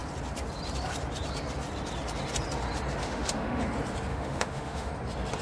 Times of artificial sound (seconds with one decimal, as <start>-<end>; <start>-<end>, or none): 3.0-3.6; 4.1-4.9

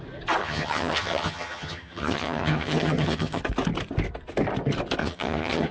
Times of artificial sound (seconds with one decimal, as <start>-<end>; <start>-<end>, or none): 0.4-3.4; 5.0-5.7

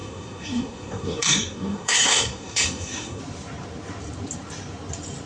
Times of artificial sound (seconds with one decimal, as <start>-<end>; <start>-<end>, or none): 0.0-3.2

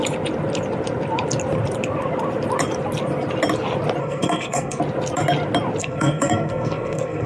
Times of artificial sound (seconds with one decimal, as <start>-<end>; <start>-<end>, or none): 4.0-4.8; 5.8-7.3

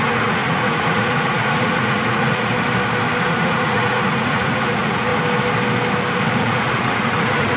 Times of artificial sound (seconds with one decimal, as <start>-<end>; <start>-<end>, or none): 0.0-2.5; 3.3-5.1; 6.3-7.6

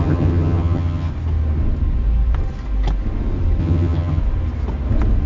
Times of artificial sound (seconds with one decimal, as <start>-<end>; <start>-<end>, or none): 0.0-1.1; 3.6-4.2